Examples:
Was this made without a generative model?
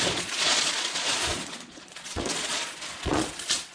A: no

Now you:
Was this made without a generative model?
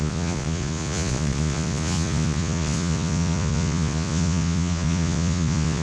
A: no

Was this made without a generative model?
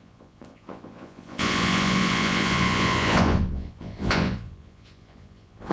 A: no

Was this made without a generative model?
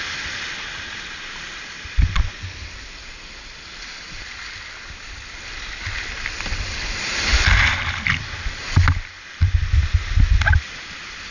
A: yes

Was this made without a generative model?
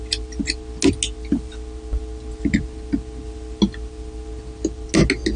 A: yes